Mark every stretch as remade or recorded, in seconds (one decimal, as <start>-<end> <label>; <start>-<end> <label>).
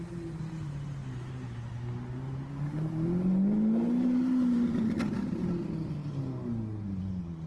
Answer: 0.0-7.5 recorded